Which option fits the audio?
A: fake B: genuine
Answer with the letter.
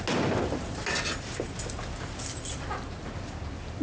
B